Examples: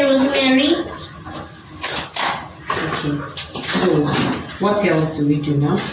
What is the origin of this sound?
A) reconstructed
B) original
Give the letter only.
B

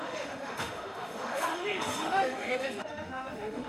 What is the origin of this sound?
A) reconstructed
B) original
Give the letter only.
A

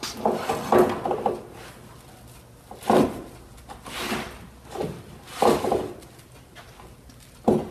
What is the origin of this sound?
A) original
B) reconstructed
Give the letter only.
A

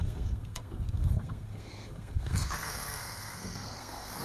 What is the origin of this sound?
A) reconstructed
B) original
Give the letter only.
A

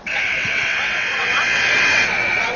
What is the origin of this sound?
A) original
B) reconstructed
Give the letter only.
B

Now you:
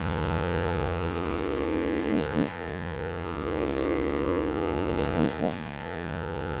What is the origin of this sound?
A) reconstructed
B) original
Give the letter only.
A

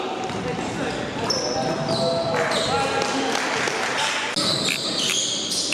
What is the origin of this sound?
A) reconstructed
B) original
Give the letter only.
B